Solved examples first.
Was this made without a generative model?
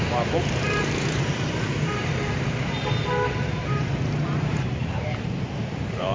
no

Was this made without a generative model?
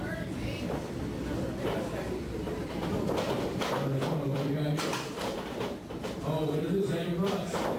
no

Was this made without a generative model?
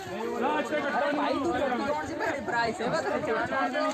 no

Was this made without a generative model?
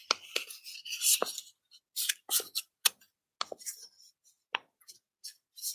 yes